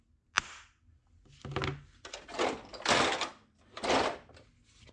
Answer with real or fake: real